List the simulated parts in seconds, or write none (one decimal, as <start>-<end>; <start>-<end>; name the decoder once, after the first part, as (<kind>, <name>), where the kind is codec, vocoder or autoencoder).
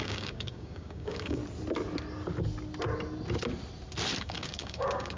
0.0-1.4 (codec, DAC); 4.2-5.2